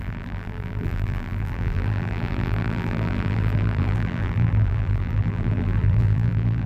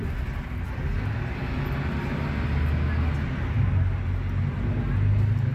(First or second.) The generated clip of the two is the first